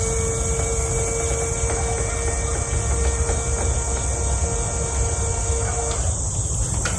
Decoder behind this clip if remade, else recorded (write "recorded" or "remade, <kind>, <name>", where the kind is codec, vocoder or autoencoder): recorded